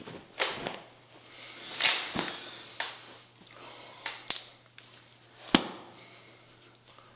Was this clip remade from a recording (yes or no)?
no